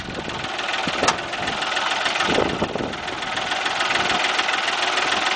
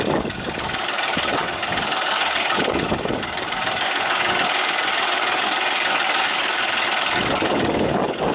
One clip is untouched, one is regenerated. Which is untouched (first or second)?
first